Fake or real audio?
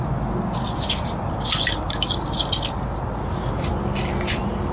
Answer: real